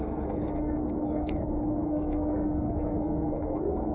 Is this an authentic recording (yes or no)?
no